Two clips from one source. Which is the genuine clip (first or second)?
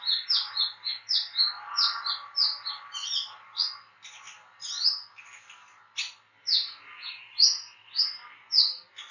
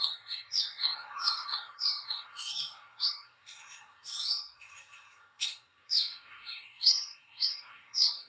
first